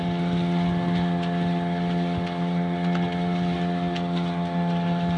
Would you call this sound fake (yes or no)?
no